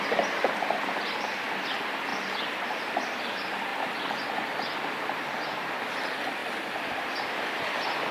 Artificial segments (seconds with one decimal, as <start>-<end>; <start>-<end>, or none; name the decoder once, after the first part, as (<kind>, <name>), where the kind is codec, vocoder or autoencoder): 3.7-4.6 (vocoder, BigVGAN v2); 6.4-7.2